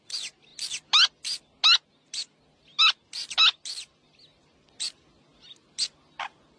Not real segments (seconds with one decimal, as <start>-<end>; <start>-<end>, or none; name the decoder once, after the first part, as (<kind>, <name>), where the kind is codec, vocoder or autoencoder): none